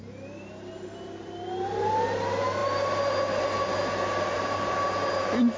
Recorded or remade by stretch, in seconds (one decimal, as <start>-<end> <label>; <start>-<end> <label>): 0.0-5.6 recorded